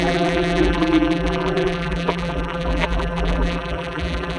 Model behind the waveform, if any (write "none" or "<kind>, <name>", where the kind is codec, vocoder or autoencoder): vocoder, BigVGAN v2